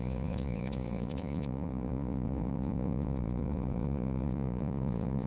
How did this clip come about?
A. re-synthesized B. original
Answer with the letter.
A